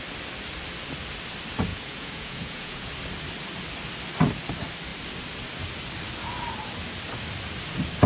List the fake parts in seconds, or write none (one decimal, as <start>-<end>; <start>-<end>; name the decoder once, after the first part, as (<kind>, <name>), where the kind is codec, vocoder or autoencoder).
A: 1.7-2.9 (vocoder, Vocos)